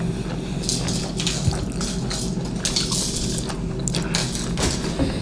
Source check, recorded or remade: recorded